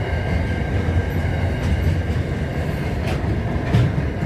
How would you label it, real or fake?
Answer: real